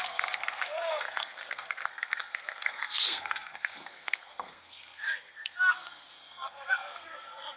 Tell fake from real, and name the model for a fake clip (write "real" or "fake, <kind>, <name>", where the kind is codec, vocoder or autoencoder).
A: fake, codec, SNAC